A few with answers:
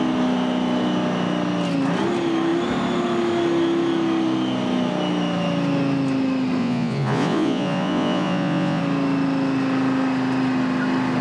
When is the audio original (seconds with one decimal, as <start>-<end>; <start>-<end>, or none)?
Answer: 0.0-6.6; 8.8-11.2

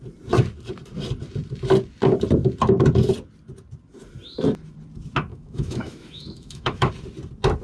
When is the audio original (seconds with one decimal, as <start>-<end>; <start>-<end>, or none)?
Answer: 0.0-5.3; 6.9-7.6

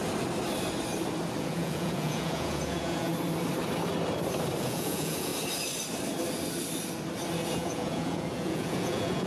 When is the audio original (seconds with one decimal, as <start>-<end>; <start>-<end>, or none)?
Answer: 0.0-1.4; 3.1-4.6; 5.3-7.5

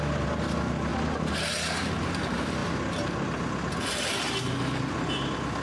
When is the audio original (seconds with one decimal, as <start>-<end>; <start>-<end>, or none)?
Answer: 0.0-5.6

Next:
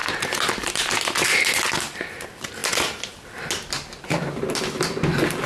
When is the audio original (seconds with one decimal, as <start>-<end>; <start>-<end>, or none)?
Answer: 0.0-5.5

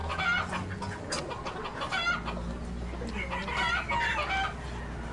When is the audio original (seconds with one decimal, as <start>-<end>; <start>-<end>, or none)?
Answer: 0.0-5.1

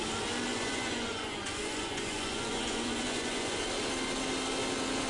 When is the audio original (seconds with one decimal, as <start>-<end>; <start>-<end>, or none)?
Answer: 0.0-0.5; 3.6-5.1

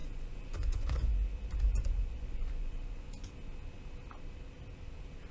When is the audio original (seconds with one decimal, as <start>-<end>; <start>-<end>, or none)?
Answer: 1.1-1.7; 3.3-5.3